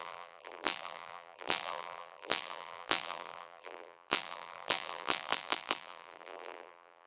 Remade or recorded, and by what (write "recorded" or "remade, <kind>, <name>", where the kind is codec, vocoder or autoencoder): remade, vocoder, BigVGAN v2